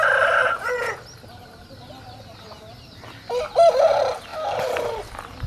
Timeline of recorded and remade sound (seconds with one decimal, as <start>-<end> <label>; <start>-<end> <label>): 0.0-0.4 recorded; 0.4-1.0 remade; 1.0-5.5 recorded

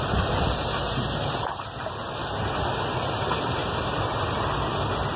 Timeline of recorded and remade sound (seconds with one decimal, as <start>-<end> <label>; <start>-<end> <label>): 0.0-5.2 recorded

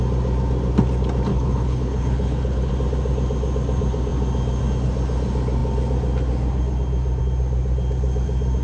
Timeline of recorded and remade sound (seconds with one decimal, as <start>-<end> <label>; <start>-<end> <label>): 0.0-1.3 recorded; 1.3-2.7 remade; 2.7-8.6 recorded

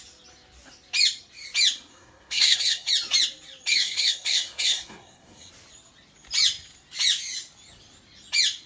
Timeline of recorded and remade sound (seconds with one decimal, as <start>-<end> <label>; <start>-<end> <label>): 0.0-1.9 recorded; 1.9-2.9 remade; 2.9-3.7 recorded; 3.7-5.5 remade; 5.5-8.7 recorded

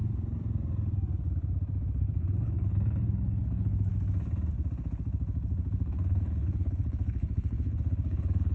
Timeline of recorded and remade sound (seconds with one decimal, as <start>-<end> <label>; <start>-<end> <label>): 0.0-2.0 recorded; 2.0-3.9 remade; 3.9-5.8 recorded; 5.8-8.5 remade

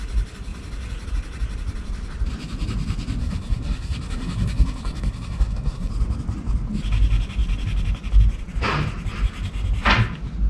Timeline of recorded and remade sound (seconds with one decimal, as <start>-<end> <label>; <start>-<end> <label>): 0.0-3.2 recorded; 3.2-5.9 remade; 5.9-10.5 recorded

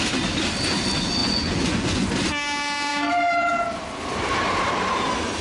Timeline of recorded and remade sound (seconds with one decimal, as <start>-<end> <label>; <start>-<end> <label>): 0.0-1.2 recorded; 1.2-2.1 remade; 2.1-5.4 recorded

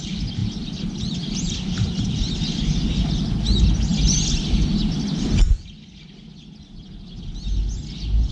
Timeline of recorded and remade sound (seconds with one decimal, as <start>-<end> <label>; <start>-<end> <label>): 0.0-0.4 recorded; 0.4-2.2 remade; 2.2-8.3 recorded